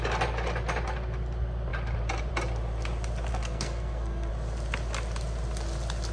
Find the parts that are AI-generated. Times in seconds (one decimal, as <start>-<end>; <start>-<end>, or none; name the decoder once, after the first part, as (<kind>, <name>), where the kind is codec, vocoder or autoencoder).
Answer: 3.3-4.3 (codec, SNAC)